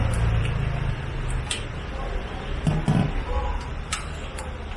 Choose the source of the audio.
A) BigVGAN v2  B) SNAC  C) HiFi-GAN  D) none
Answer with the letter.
D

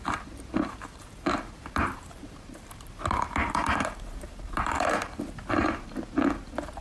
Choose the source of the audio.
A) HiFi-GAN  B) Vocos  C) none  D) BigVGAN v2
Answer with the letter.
D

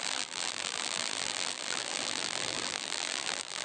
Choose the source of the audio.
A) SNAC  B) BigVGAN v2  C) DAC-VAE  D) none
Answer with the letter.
B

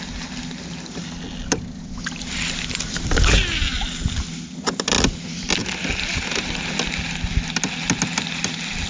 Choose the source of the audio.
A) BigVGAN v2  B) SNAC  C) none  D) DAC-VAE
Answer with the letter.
C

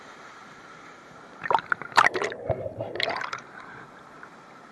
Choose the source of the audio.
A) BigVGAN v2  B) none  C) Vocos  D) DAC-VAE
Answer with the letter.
A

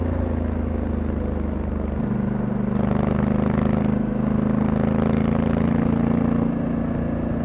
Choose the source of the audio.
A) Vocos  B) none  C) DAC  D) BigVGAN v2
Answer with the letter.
B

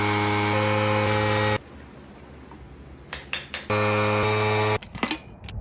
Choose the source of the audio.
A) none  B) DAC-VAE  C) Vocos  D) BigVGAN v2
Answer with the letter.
A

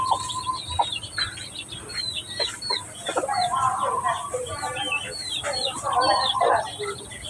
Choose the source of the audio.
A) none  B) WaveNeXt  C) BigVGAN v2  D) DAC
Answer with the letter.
A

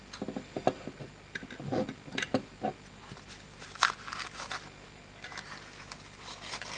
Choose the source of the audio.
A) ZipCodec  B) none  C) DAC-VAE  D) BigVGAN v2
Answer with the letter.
B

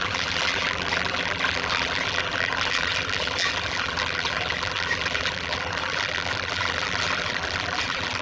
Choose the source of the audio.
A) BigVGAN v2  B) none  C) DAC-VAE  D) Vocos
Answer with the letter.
A